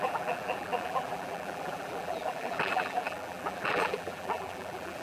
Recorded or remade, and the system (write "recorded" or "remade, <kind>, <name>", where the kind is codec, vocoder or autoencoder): remade, vocoder, BigVGAN v2